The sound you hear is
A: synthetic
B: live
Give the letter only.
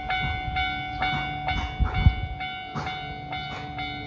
B